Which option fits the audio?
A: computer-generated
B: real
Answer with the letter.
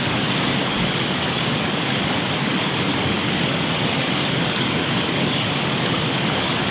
A